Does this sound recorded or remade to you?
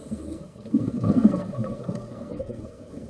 remade